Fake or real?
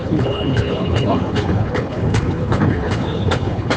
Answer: fake